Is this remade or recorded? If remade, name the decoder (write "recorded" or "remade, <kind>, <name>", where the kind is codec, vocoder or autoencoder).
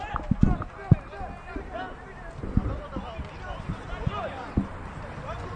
recorded